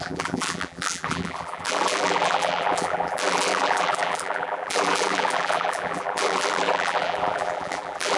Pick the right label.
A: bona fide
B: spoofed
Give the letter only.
B